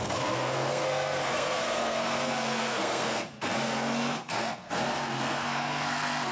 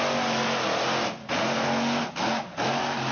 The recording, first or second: second